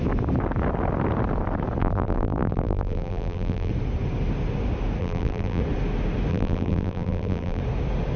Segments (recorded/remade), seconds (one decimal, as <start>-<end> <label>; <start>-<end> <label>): 0.0-1.8 recorded; 1.8-3.7 remade; 3.7-5.0 recorded; 5.0-5.6 remade; 5.6-6.3 recorded; 6.3-7.6 remade; 7.6-8.2 recorded